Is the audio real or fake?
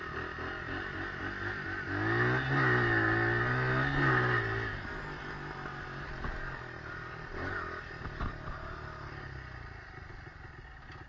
real